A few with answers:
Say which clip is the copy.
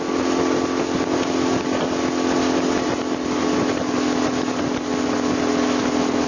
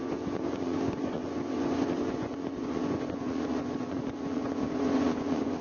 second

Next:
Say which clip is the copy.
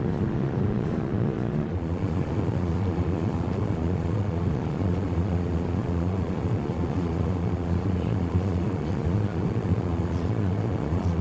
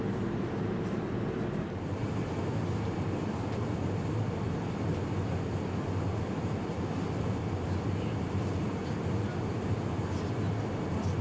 first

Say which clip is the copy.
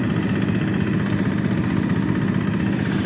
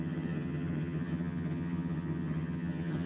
second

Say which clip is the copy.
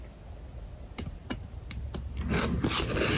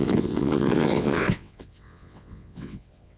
second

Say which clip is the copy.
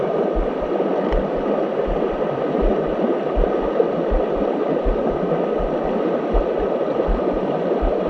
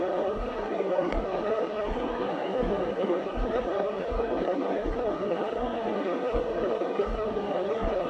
second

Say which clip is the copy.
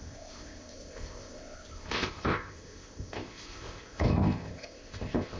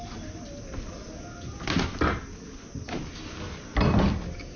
first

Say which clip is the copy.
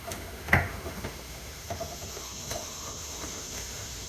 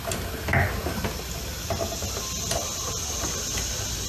first